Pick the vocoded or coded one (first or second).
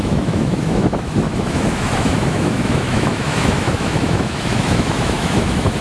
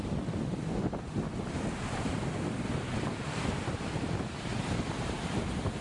first